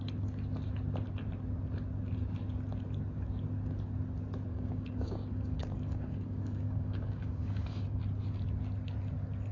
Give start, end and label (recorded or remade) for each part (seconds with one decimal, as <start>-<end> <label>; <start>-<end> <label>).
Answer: 0.0-4.5 recorded; 4.5-8.0 remade; 8.0-9.5 recorded